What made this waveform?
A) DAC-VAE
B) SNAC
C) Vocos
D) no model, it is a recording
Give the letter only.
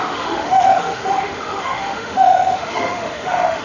A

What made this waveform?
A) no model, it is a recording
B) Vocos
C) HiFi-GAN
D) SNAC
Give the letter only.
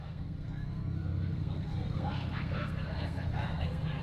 D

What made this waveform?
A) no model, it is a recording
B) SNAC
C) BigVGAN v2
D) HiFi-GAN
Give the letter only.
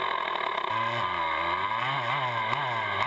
A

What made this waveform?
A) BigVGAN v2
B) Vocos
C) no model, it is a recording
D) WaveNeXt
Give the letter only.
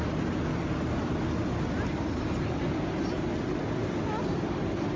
C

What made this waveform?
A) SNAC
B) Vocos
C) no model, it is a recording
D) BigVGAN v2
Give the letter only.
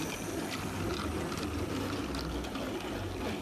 C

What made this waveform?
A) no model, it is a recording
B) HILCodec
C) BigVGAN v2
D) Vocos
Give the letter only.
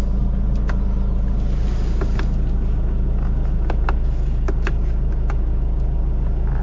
A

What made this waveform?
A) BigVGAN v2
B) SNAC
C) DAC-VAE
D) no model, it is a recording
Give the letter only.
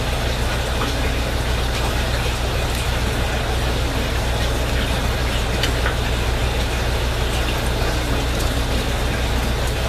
D